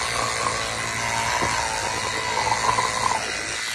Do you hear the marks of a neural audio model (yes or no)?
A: no